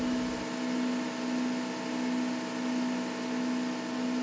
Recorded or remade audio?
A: recorded